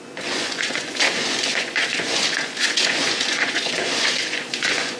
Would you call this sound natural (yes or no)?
no